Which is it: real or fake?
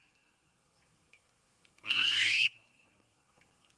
fake